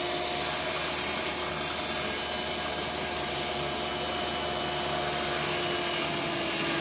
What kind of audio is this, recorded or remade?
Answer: recorded